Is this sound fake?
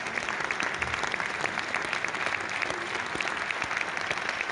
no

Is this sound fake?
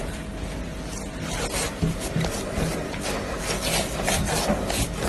no